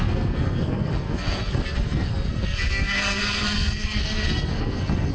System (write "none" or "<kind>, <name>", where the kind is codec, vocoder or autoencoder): codec, SNAC